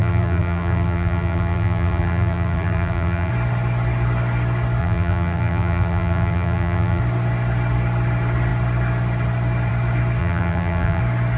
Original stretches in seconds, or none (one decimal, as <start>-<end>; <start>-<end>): 3.3-4.8; 7.0-10.2; 11.0-11.4